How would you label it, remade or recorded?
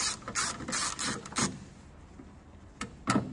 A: recorded